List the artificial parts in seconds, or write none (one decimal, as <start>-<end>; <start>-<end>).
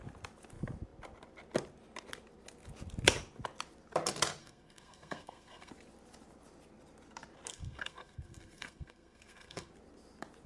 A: 4.4-5.7; 7.5-9.7